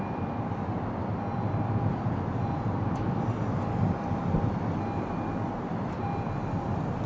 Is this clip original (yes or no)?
no